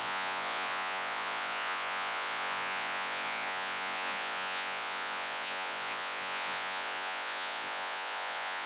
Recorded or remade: remade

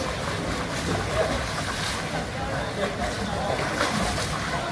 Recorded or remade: recorded